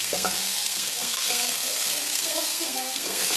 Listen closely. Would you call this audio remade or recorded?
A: remade